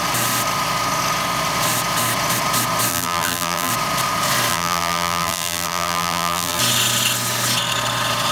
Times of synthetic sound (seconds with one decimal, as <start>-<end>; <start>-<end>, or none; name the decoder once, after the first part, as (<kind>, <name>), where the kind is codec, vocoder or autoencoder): 2.9-3.7 (vocoder, BigVGAN v2); 4.5-6.6